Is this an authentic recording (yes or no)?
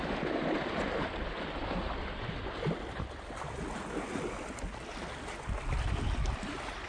yes